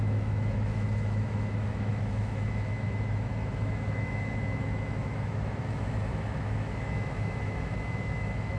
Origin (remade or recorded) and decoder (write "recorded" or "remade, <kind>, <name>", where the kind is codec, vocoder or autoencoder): remade, autoencoder, DAC-VAE